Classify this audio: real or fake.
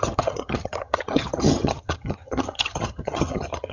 fake